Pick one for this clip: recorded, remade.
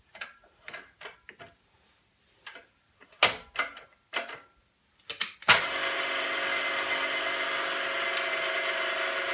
recorded